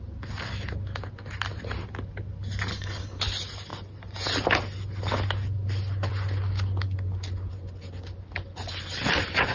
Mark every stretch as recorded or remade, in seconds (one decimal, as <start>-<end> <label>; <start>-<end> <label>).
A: 0.0-2.7 recorded; 2.7-3.2 remade; 3.2-9.5 recorded

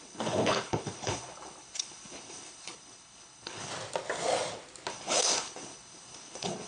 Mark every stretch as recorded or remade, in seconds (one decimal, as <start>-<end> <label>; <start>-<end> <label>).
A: 0.0-3.7 remade; 3.7-4.9 recorded; 4.9-6.7 remade

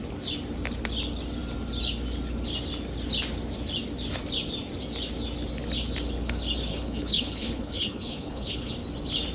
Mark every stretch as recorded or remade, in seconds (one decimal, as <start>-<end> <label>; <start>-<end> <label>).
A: 0.0-6.7 recorded; 6.7-8.7 remade; 8.7-9.3 recorded

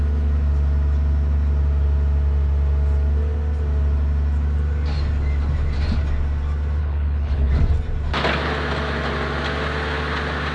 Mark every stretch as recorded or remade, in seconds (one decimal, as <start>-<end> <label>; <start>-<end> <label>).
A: 0.0-6.8 recorded; 6.8-7.5 remade; 7.5-10.5 recorded

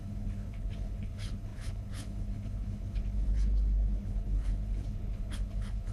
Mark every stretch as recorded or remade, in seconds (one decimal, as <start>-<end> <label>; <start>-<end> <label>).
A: 0.0-5.9 remade

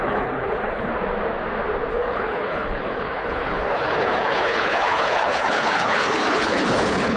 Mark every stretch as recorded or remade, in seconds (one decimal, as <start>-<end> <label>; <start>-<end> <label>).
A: 0.0-0.9 remade; 0.9-1.9 recorded; 1.9-7.2 remade

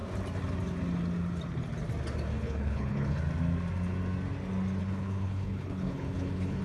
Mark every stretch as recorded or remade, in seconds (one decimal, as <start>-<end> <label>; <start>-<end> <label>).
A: 0.0-2.3 recorded; 2.3-3.2 remade; 3.2-4.8 recorded; 4.8-6.6 remade

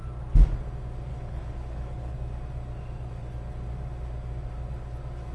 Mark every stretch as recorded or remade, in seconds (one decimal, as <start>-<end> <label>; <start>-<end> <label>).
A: 0.0-1.1 recorded; 1.1-2.1 remade; 2.1-5.3 recorded